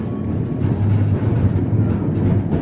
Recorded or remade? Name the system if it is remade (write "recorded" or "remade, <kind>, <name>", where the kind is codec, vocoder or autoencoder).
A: recorded